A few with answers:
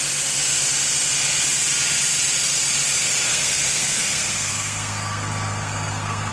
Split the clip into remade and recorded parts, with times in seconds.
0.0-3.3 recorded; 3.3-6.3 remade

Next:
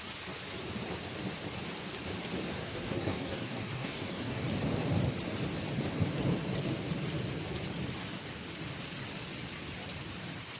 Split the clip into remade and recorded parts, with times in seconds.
0.0-2.5 recorded; 2.5-4.4 remade; 4.4-10.6 recorded

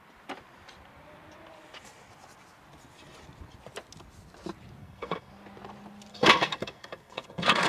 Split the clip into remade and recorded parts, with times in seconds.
0.0-4.8 recorded; 4.8-5.3 remade; 5.3-6.1 recorded; 6.1-7.7 remade

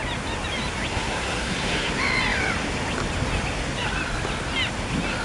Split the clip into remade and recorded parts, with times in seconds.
0.0-0.9 recorded; 0.9-1.9 remade; 1.9-5.2 recorded